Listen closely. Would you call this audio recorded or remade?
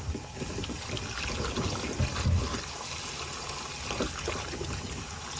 recorded